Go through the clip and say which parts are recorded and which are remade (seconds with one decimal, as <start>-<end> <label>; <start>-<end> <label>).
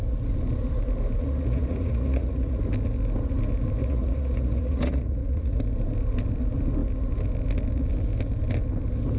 0.0-1.2 recorded; 1.2-2.6 remade; 2.6-3.8 recorded; 3.8-5.6 remade; 5.6-9.2 recorded